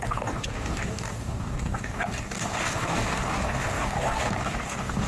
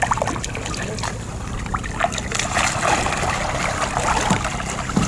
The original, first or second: second